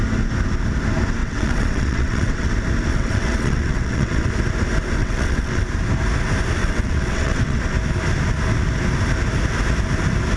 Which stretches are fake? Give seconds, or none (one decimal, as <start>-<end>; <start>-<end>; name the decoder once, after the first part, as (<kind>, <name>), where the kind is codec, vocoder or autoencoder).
1.2-2.5 (vocoder, WaveNeXt); 2.9-4.3; 5.0-5.6; 6.6-7.6